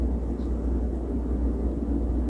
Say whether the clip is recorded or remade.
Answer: recorded